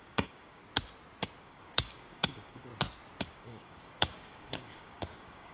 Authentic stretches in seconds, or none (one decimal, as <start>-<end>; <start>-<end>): 0.6-1.4; 2.7-3.2